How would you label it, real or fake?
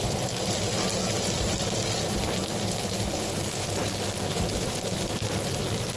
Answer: fake